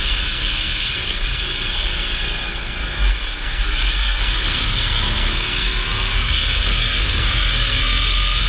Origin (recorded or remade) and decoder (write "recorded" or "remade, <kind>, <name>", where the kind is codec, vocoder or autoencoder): remade, codec, SNAC